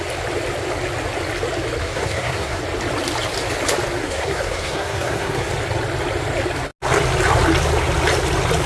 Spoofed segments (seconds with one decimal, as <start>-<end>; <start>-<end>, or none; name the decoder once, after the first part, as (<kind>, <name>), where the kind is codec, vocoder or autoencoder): 1.8-2.6 (codec, SNAC); 4.0-5.5